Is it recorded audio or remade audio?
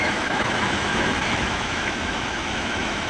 remade